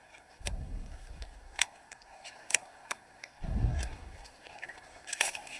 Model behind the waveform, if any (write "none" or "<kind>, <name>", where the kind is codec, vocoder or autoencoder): codec, SNAC